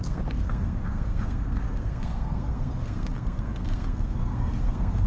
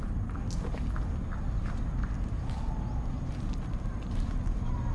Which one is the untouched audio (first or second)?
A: second